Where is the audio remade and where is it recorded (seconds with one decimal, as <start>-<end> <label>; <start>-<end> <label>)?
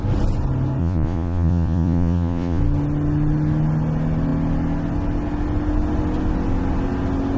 0.0-0.8 recorded; 0.8-2.6 remade; 2.6-7.4 recorded